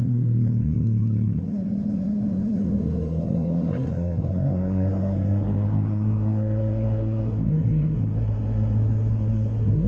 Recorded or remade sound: remade